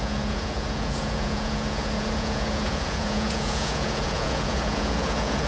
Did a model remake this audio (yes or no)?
yes